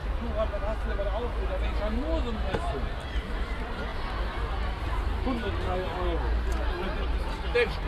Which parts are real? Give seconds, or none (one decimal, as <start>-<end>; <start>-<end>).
0.0-7.9